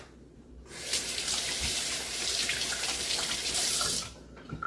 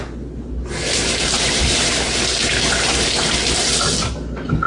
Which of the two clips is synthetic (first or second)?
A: first